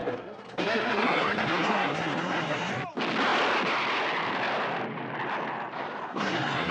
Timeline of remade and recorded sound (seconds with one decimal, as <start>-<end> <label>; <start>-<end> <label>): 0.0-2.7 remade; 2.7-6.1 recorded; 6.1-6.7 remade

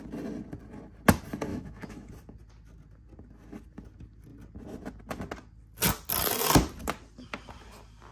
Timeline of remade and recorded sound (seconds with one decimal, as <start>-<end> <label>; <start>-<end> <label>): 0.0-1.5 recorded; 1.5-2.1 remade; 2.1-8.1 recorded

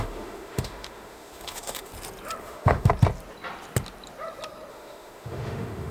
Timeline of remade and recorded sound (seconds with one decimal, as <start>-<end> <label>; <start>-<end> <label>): 0.0-1.9 remade; 1.9-2.4 recorded; 2.4-2.9 remade; 2.9-4.7 recorded; 4.7-5.9 remade

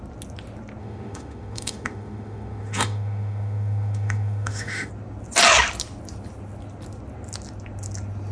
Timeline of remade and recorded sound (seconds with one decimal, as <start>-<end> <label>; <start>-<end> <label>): 0.0-0.8 recorded; 0.8-4.9 remade; 4.9-8.3 recorded